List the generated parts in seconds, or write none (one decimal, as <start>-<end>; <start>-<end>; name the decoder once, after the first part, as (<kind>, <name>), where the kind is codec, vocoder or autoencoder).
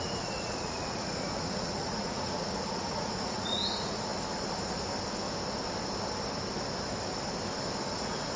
0.0-4.1 (vocoder, Vocos); 8.0-8.4